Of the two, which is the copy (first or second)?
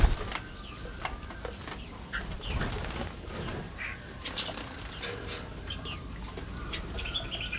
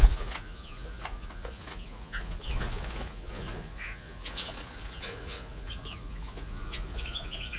second